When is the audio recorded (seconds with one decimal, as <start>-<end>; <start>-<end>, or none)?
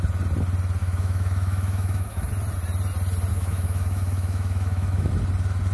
0.0-0.8; 2.3-3.3; 5.1-5.7